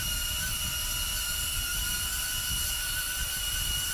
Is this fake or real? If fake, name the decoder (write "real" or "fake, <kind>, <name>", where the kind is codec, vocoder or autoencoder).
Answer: real